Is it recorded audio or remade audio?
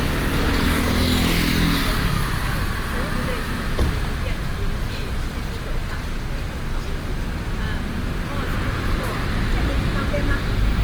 recorded